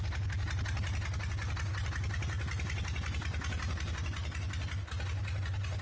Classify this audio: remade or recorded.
recorded